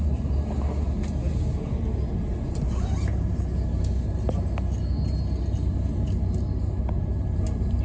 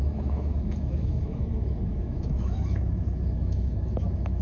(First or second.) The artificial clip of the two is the second